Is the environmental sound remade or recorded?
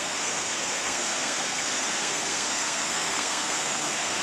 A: remade